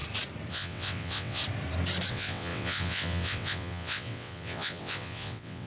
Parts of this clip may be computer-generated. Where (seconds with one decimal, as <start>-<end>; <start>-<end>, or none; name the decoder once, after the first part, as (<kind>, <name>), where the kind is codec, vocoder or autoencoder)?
0.5-1.4 (vocoder, WaveNeXt); 2.1-5.7